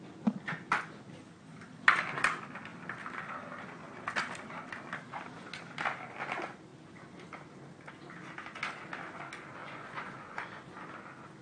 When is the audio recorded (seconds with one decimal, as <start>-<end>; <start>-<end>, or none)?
0.0-9.6; 10.5-11.4